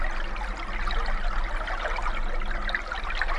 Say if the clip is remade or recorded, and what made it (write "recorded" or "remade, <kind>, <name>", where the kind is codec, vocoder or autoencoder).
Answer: recorded